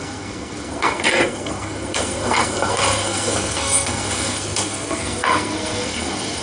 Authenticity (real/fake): fake